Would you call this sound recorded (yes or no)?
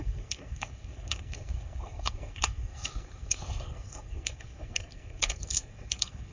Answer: no